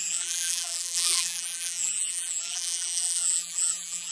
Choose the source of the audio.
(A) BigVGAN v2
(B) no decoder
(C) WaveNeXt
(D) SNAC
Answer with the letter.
A